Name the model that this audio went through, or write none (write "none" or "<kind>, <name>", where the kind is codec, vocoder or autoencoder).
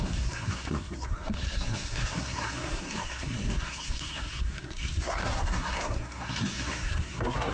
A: codec, SNAC